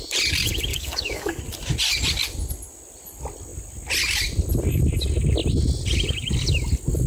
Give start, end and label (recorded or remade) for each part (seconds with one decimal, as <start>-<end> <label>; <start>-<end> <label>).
0.0-0.7 recorded; 0.7-1.4 remade; 1.4-7.1 recorded